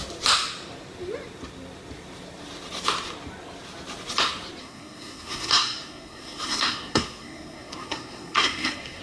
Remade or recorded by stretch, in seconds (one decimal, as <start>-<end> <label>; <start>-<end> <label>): 0.0-4.6 recorded; 4.6-9.0 remade